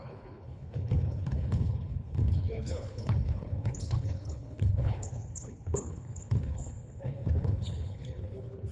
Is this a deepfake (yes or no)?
yes